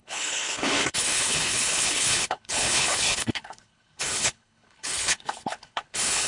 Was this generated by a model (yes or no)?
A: yes